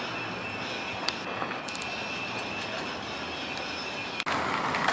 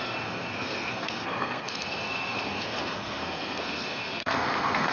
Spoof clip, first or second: second